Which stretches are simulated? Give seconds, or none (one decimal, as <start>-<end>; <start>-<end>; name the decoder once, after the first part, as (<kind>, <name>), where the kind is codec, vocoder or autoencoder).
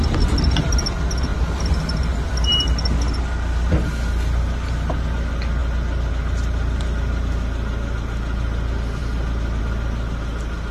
none